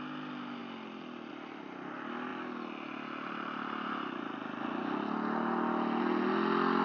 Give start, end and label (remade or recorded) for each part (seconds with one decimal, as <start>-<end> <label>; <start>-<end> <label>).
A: 0.0-6.8 recorded